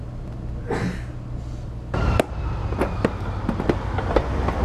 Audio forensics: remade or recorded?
recorded